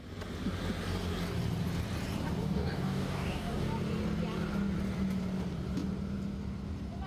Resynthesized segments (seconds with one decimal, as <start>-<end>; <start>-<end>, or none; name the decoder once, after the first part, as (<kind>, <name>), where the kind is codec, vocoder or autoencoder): 2.4-3.6 (codec, DAC)